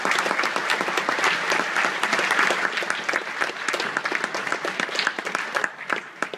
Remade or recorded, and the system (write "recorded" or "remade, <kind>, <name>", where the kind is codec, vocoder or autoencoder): recorded